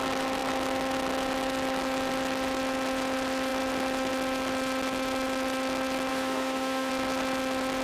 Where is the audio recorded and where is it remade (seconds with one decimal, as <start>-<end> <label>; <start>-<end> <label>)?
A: 0.0-6.1 recorded; 6.1-6.9 remade; 6.9-7.8 recorded